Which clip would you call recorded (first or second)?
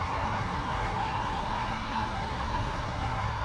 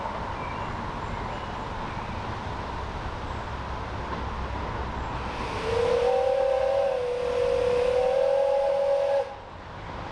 second